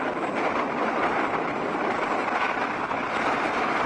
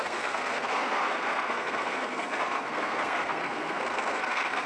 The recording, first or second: first